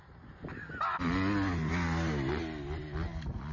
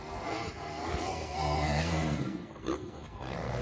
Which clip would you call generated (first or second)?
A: second